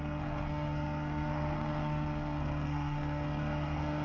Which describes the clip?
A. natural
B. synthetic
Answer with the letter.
B